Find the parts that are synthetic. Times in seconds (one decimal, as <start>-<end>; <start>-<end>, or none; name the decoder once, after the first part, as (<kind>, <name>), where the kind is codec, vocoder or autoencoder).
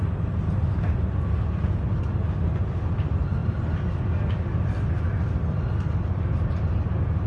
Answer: none